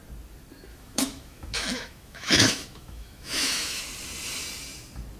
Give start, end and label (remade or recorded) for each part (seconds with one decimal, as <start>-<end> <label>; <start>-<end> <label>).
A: 0.0-0.7 recorded; 0.7-3.8 remade; 3.8-5.2 recorded

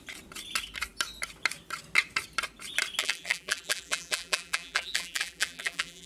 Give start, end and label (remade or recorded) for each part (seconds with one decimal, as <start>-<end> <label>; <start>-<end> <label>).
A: 0.0-3.0 recorded; 3.0-6.1 remade

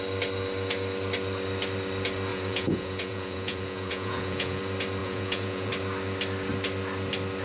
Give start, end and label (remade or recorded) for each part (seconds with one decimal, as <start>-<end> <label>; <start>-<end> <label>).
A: 0.0-2.3 recorded; 2.3-4.6 remade; 4.6-5.0 recorded; 5.0-5.7 remade; 5.7-7.4 recorded

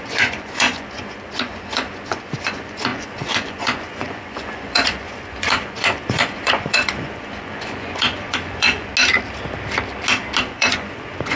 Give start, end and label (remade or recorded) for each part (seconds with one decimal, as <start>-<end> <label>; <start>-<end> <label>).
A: 0.0-8.9 remade; 8.9-10.4 recorded; 10.4-11.4 remade